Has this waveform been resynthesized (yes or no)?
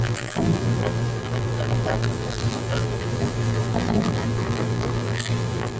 yes